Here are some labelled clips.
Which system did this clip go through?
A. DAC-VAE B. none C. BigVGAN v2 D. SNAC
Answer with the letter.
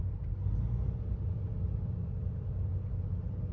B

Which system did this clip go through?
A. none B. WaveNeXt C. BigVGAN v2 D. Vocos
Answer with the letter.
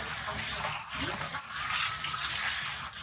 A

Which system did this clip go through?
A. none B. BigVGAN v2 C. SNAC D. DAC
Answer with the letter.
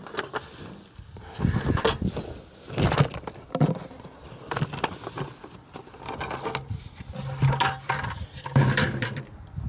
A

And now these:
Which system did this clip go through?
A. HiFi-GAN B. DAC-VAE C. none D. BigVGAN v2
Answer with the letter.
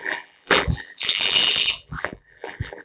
D